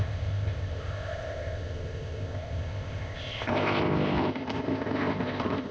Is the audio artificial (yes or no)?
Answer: yes